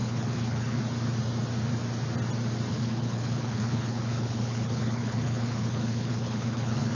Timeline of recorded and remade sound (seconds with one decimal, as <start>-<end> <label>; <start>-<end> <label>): 0.0-0.8 remade; 0.8-2.7 recorded; 2.7-6.9 remade